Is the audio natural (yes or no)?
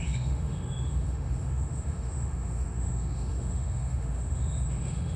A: no